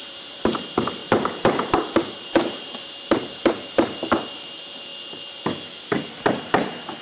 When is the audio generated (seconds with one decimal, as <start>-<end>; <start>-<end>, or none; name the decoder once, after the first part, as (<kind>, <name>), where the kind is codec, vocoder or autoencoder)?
0.0-4.9 (vocoder, BigVGAN v2); 6.1-7.0